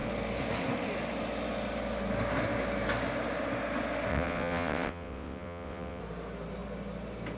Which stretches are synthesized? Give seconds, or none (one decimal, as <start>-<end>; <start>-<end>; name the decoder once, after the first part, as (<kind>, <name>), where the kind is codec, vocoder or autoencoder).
4.1-6.0 (vocoder, WaveNeXt)